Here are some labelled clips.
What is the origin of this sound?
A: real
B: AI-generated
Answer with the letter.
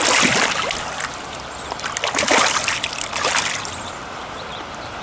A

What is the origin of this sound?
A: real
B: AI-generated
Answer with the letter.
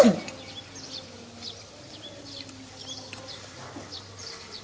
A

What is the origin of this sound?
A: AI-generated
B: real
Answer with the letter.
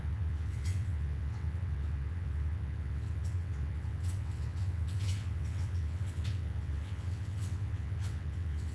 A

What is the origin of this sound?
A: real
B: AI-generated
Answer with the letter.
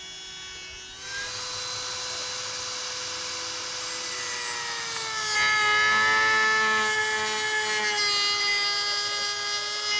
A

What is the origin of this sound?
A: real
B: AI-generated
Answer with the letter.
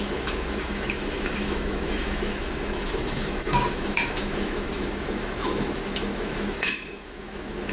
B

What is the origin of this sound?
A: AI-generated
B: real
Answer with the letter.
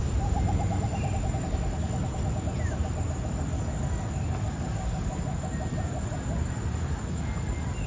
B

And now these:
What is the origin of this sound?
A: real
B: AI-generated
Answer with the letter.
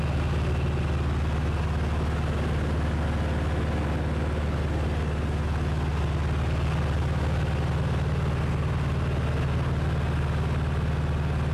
A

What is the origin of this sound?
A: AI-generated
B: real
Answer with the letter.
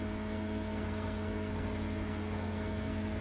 A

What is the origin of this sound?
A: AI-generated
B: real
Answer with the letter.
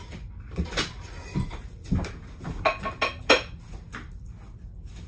B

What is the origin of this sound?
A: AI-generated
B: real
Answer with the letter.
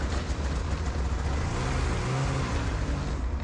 B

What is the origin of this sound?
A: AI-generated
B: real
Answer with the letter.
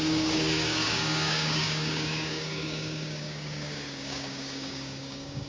A